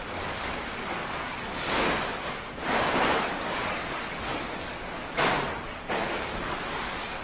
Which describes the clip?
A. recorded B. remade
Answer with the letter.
B